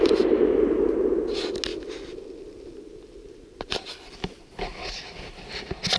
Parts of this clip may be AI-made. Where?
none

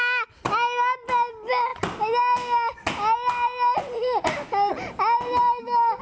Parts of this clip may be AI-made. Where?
none

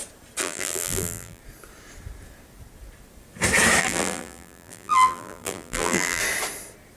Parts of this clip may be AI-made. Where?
0.4-1.4 (vocoder, BigVGAN v2); 3.8-6.2

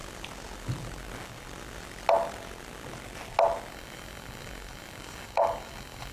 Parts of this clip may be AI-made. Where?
3.7-6.1 (codec, DAC)

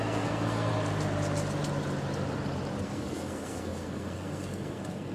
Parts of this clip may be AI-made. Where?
0.0-0.7 (codec, SNAC); 2.8-5.1